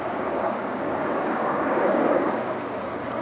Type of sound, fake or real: fake